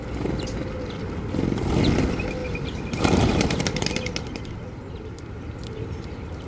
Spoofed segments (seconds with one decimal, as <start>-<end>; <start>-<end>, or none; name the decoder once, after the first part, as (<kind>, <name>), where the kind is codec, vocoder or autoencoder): 2.4-3.6 (vocoder, BigVGAN v2)

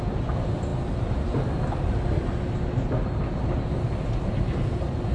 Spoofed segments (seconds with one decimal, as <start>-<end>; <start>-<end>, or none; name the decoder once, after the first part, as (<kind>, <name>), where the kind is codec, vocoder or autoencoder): none

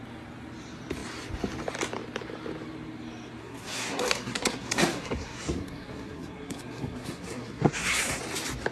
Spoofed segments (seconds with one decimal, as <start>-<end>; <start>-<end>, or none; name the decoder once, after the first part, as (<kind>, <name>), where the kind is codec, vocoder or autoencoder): 3.4-8.2 (codec, SNAC)

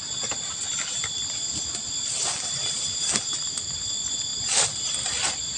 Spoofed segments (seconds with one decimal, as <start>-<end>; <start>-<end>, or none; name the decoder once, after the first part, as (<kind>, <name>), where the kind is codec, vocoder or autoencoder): none

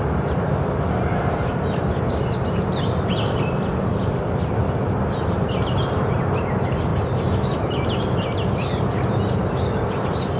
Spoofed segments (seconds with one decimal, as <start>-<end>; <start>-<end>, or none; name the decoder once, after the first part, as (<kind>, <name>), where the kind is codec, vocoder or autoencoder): none